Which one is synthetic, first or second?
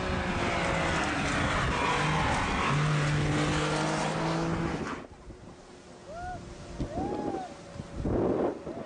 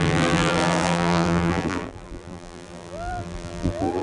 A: second